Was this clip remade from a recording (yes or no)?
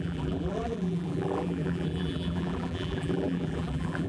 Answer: yes